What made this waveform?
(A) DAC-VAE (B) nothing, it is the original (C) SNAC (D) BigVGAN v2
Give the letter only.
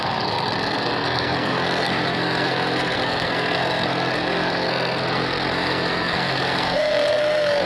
C